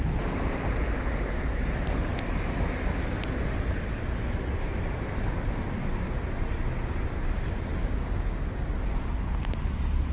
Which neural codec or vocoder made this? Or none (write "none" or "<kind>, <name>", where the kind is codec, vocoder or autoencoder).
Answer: none